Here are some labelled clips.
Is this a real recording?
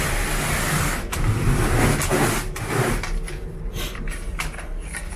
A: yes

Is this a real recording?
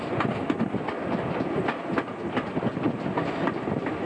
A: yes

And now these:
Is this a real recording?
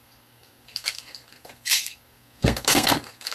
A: no